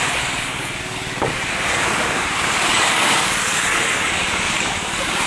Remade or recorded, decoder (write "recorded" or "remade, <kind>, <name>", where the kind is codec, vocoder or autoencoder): remade, codec, DAC